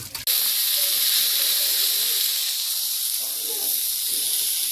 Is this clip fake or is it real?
real